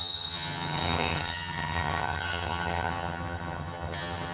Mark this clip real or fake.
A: fake